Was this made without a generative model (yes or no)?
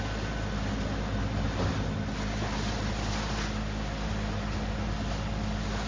yes